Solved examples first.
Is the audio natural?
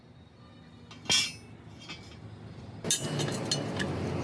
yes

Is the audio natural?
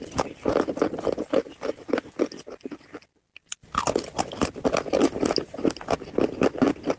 yes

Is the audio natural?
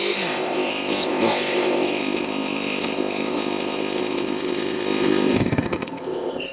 no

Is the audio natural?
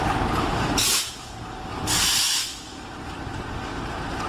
yes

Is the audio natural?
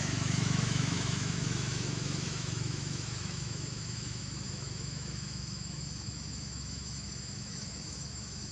no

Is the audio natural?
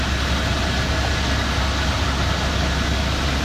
yes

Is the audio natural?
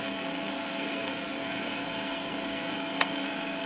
no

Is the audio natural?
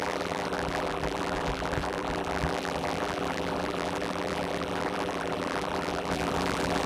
no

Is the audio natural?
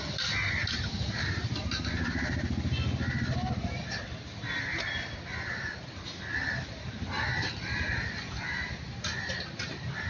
yes